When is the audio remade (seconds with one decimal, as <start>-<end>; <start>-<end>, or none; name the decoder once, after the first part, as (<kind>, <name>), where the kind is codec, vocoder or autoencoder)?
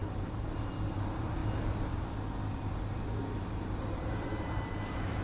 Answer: 0.0-1.4 (vocoder, BigVGAN v2); 2.7-5.2